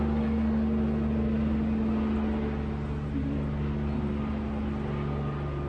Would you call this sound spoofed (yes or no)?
no